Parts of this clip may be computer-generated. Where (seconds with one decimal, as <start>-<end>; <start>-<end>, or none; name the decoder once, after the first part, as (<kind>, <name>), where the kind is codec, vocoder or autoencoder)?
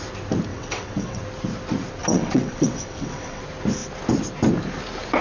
0.5-1.2 (vocoder, WaveNeXt); 2.0-3.4